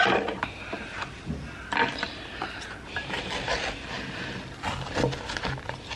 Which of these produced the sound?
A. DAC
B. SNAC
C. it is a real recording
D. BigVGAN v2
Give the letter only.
C